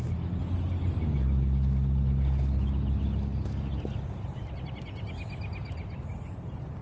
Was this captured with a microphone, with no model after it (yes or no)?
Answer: yes